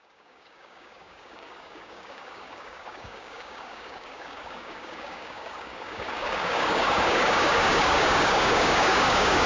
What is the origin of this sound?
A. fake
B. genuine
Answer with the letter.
A